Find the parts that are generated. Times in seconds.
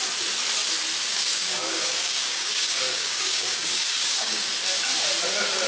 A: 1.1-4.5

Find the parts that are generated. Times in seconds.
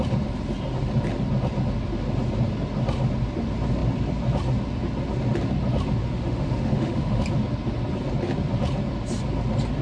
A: 6.0-7.2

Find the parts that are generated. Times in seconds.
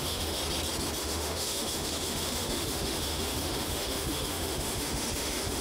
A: 0.0-0.4; 1.0-5.6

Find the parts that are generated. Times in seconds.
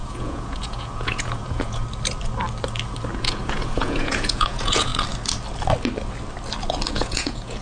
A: 0.0-1.8; 3.2-4.9; 6.9-7.6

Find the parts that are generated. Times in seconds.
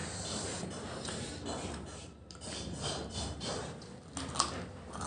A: none